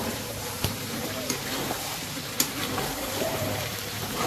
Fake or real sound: fake